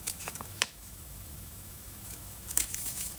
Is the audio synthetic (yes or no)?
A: yes